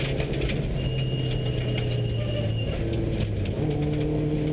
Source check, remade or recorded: recorded